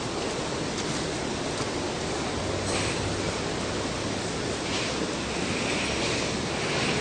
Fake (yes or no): no